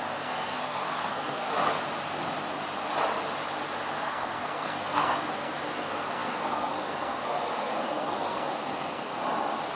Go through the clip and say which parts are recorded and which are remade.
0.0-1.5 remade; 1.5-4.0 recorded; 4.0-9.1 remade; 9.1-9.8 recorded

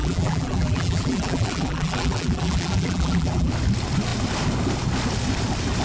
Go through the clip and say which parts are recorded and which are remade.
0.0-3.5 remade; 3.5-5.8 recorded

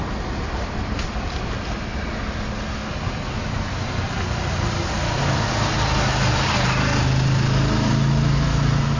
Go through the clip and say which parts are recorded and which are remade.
0.0-9.0 recorded